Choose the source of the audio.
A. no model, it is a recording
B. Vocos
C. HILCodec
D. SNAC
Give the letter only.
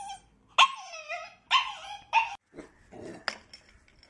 A